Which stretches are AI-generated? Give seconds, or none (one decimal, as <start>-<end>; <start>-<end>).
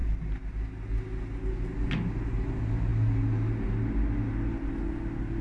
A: none